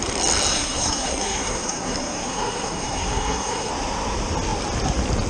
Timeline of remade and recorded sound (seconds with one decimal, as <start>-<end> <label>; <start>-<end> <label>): 0.0-0.5 recorded; 0.5-3.7 remade; 3.7-5.3 recorded